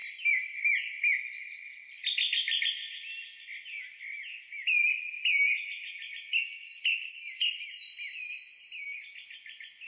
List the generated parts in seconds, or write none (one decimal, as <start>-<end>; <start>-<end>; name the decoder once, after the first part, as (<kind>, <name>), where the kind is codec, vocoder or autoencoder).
none